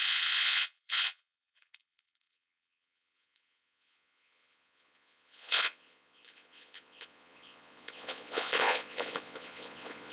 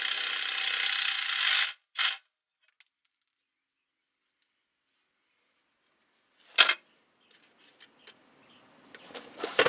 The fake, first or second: first